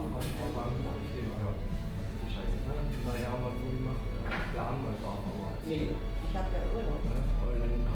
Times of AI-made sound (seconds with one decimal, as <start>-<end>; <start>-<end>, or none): 1.2-1.9; 5.3-6.0